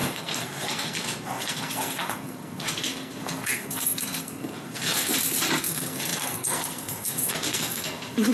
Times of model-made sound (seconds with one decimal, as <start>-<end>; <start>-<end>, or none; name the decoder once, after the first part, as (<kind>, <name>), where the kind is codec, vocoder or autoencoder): 0.0-5.1 (codec, SNAC); 5.6-8.3